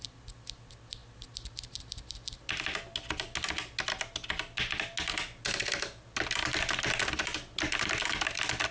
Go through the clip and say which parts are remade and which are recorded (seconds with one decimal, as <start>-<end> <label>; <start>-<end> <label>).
0.0-8.7 recorded